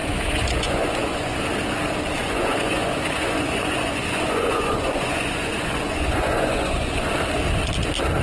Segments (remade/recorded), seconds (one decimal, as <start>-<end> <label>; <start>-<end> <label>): 0.0-1.4 remade; 1.4-2.2 recorded; 2.2-7.1 remade; 7.1-8.2 recorded

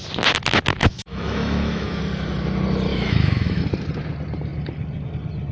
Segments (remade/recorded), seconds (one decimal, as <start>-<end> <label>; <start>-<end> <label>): 0.0-0.8 recorded; 0.8-2.0 remade; 2.0-2.9 recorded; 2.9-3.6 remade; 3.6-5.5 recorded

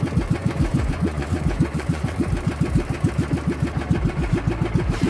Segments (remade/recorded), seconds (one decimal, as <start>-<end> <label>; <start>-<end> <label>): 0.0-0.4 recorded; 0.4-2.3 remade; 2.3-5.1 recorded